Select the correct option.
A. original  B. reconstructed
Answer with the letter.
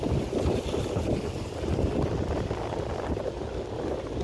A